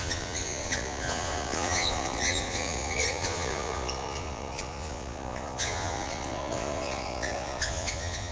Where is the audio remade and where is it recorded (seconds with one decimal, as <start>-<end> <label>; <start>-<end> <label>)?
0.0-8.3 remade